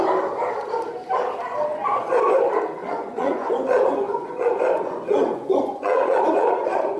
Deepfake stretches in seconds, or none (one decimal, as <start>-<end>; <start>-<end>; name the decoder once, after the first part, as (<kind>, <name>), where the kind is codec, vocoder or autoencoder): 1.7-2.4 (vocoder, Vocos); 2.8-7.0